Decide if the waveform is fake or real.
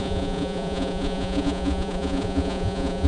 fake